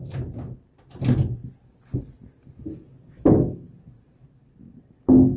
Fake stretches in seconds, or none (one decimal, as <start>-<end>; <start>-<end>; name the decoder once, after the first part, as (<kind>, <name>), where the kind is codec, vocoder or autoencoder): none